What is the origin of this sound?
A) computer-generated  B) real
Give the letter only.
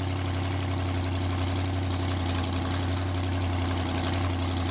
B